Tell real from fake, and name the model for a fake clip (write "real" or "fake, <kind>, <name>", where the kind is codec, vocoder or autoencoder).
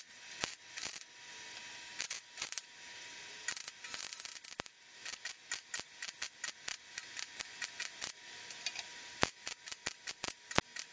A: real